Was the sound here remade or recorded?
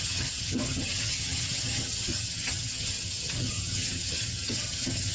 remade